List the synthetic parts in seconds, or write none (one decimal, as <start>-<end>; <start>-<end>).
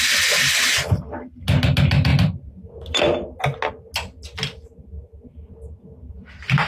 none